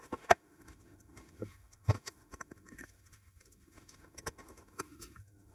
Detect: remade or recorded remade